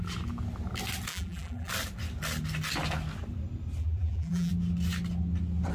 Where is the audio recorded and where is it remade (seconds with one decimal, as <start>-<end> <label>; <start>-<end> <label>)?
0.0-1.1 recorded; 1.1-1.7 remade; 1.7-3.8 recorded; 3.8-4.5 remade; 4.5-5.7 recorded